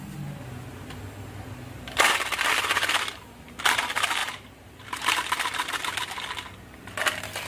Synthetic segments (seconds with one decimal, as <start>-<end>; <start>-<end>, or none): 4.2-5.1